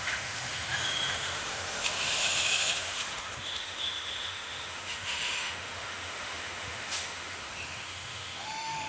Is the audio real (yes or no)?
no